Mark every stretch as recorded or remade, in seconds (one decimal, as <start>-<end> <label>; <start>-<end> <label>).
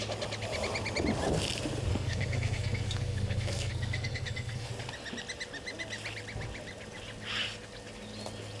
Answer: 0.0-1.9 recorded; 1.9-4.7 remade; 4.7-8.6 recorded